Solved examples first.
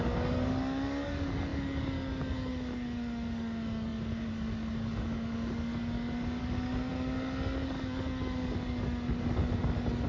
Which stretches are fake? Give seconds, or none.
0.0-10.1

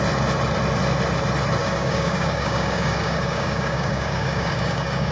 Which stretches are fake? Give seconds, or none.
1.6-5.1

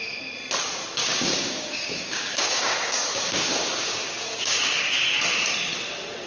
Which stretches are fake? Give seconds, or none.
1.0-4.8

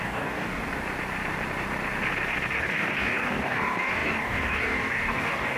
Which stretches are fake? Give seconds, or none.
0.0-0.6; 2.6-5.6